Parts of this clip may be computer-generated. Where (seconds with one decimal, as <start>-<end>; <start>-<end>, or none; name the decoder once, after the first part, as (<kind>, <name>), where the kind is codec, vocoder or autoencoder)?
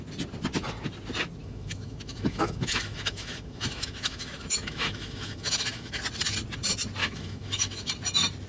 1.4-6.0 (autoencoder, DAC-VAE); 7.0-7.9